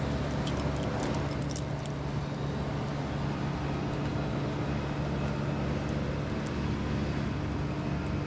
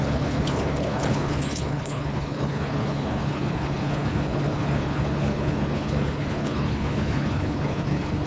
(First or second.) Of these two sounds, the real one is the first